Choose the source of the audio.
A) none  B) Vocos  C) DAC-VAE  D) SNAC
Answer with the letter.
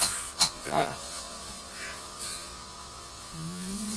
B